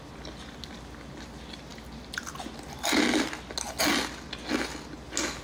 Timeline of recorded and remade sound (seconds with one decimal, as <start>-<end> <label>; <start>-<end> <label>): 0.0-5.4 recorded